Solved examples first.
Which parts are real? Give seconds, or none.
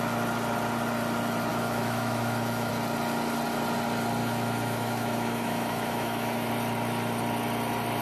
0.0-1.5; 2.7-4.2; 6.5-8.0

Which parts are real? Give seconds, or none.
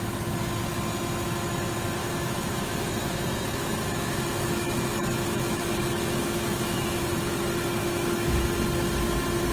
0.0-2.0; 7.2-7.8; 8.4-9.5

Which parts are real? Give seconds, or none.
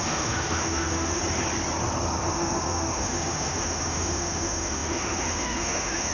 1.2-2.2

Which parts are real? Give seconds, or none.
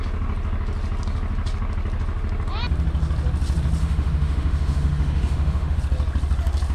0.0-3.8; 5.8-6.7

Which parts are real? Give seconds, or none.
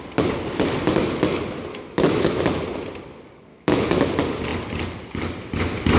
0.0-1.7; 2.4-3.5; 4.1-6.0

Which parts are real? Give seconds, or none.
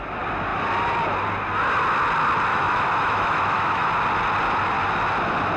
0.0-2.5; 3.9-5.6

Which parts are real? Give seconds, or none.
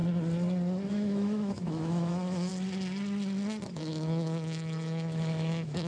0.0-0.9; 2.5-3.7